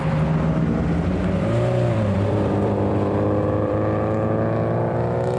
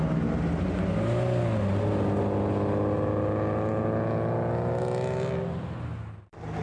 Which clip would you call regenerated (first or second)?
first